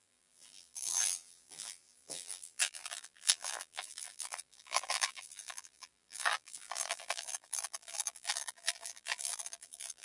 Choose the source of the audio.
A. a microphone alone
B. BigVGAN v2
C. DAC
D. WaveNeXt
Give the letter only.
B